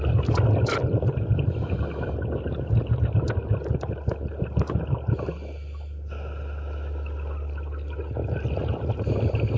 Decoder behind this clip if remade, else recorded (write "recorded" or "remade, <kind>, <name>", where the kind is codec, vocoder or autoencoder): recorded